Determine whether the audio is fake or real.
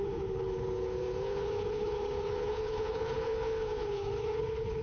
fake